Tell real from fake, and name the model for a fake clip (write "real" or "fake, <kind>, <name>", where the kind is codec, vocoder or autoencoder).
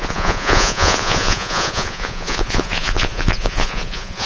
fake, vocoder, Vocos